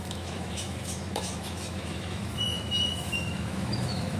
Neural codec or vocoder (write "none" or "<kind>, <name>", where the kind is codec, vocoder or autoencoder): autoencoder, DAC-VAE